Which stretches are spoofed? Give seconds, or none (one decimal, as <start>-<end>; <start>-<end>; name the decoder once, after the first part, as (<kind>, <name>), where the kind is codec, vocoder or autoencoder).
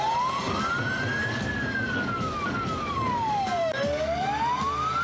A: 1.2-4.2 (codec, DAC)